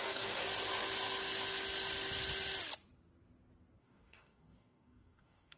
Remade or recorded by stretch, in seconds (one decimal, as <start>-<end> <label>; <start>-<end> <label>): 0.0-0.4 remade; 0.4-3.8 recorded; 3.8-5.6 remade